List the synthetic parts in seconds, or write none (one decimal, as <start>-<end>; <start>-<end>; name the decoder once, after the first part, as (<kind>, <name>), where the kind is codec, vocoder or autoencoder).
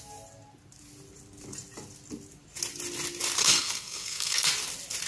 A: 3.4-4.5 (codec, SNAC)